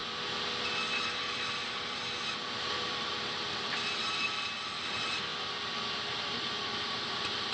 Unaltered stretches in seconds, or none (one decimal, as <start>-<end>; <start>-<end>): 0.0-1.1; 2.0-2.7; 5.3-6.3